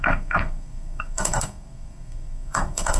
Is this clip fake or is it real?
fake